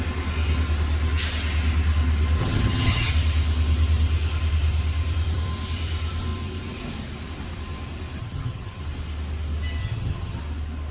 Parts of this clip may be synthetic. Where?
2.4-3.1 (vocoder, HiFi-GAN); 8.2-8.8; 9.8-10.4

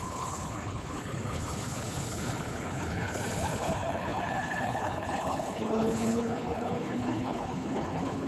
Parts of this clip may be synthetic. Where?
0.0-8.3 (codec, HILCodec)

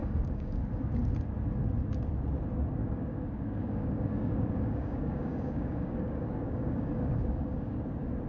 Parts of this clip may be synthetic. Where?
0.0-0.6 (codec, DAC); 2.8-7.8

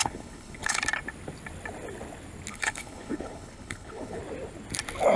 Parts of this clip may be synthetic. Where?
0.0-0.8 (codec, HILCodec); 2.5-4.2

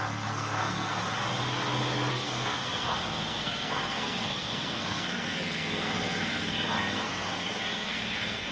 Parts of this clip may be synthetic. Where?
0.0-1.0 (codec, SNAC); 2.1-8.5

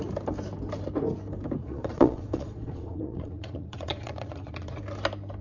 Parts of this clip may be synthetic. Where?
1.6-4.8 (vocoder, Vocos)